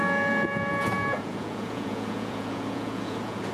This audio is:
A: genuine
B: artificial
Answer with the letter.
B